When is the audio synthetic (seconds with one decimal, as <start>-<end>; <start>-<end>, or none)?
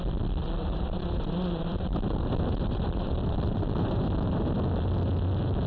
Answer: 0.6-4.0